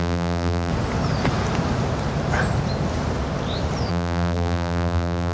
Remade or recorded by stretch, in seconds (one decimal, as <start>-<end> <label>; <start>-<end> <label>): 0.0-0.7 remade; 0.7-3.9 recorded; 3.9-5.3 remade